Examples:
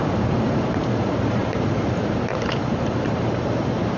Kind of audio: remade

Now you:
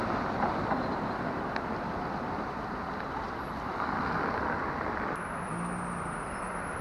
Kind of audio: recorded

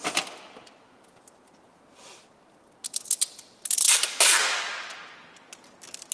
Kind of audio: recorded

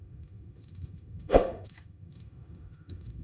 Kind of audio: remade